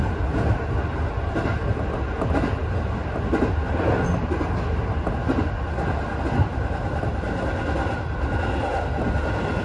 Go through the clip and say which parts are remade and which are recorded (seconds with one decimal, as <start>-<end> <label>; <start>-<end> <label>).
0.0-9.6 recorded